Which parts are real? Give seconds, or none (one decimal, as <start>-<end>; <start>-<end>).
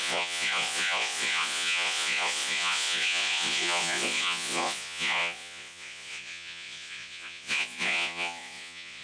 none